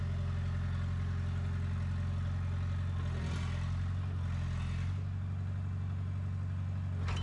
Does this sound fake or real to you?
real